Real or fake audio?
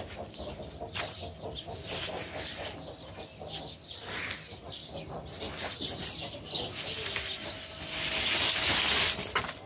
real